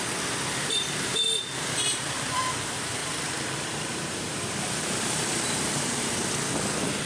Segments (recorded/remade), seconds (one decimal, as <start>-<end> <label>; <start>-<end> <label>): 0.0-1.9 recorded; 1.9-2.4 remade; 2.4-3.0 recorded; 3.0-6.1 remade; 6.1-7.1 recorded